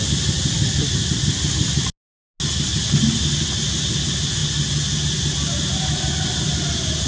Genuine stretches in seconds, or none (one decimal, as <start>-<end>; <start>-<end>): 0.0-7.1